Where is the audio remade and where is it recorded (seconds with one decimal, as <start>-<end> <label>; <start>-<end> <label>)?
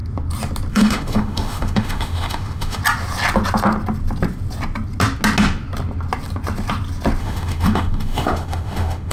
0.0-0.7 recorded; 0.7-2.8 remade; 2.8-7.2 recorded; 7.2-9.1 remade